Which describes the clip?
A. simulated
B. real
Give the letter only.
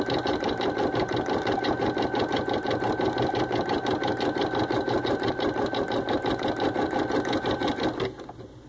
B